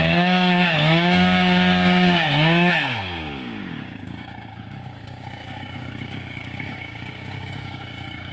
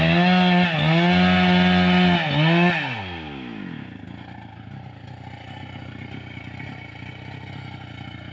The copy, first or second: first